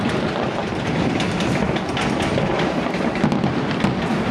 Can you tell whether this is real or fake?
real